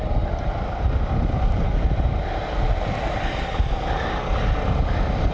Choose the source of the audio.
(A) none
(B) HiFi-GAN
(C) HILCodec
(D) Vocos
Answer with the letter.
A